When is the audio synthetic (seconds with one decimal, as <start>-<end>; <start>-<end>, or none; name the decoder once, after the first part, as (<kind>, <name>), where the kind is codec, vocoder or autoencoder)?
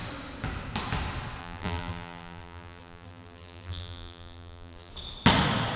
1.4-4.9 (vocoder, BigVGAN v2)